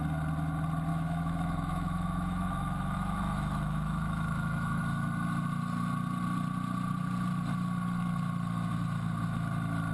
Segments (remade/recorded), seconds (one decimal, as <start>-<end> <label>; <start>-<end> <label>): 0.0-0.9 recorded; 0.9-4.8 remade; 4.8-9.9 recorded